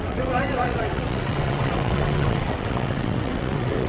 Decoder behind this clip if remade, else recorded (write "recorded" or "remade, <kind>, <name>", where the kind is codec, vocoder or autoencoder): remade, vocoder, WaveNeXt